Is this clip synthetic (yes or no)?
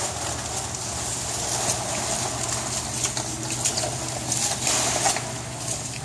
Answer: no